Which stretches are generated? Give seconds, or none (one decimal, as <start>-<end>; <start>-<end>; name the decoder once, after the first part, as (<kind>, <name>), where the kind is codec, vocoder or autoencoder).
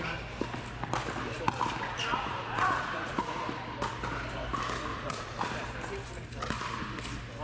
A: 2.1-3.2 (vocoder, Vocos); 4.9-5.4